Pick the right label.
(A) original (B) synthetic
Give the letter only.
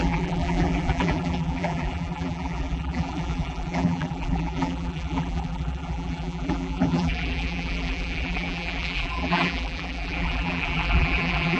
B